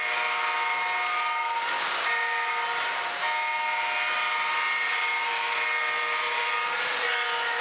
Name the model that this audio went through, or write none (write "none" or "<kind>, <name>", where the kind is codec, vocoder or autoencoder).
none